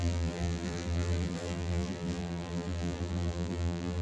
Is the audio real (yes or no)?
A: no